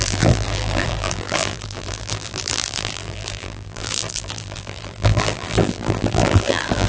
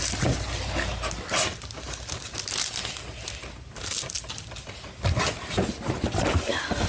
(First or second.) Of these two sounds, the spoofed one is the first